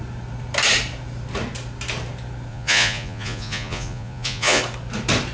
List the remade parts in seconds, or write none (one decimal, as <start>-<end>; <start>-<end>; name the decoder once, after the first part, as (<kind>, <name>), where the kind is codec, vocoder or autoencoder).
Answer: 2.5-4.6 (vocoder, Vocos)